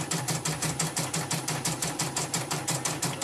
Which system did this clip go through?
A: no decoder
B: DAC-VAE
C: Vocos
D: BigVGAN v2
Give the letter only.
D